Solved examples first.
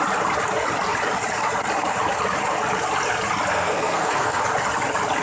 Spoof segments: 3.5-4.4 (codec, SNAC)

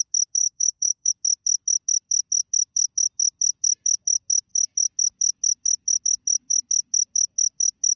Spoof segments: 0.4-1.1 (codec, DAC)

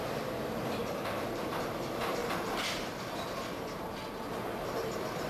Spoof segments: 0.0-2.2 (vocoder, BigVGAN v2); 3.6-4.0; 4.6-5.3

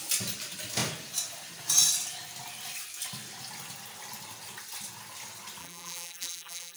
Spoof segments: 5.6-6.8 (vocoder, BigVGAN v2)

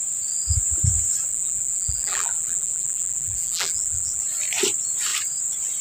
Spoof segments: 1.3-4.2 (vocoder, BigVGAN v2)